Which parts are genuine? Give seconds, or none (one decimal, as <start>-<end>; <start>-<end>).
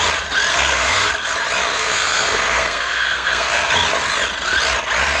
0.0-0.5; 1.1-1.7; 3.7-5.2